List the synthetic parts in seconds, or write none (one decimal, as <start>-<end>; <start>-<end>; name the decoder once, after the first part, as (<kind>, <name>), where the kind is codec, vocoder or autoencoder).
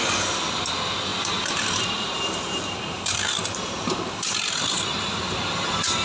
0.0-6.0 (vocoder, BigVGAN v2)